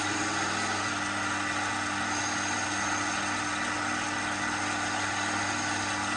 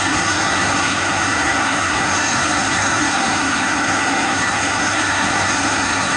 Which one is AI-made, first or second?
second